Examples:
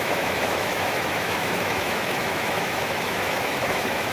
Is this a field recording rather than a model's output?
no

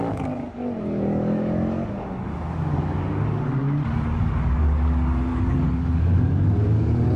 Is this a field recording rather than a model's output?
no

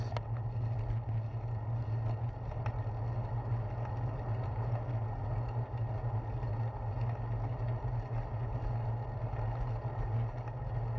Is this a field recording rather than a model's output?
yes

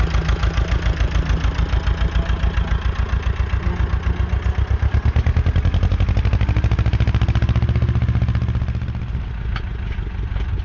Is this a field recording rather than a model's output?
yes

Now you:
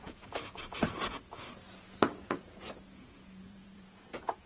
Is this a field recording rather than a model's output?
no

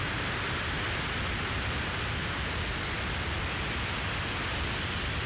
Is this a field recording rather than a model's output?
yes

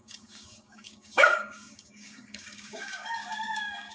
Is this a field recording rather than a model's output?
no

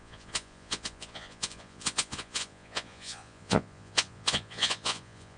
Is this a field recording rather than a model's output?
no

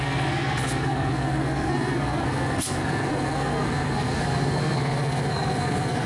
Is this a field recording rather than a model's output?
no